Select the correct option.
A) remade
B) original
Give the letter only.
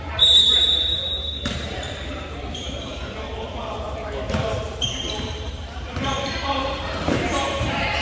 A